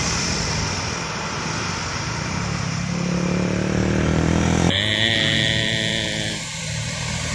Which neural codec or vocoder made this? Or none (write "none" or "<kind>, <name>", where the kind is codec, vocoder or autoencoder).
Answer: vocoder, BigVGAN v2